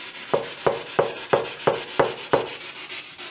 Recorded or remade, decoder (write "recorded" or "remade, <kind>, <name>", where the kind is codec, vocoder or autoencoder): recorded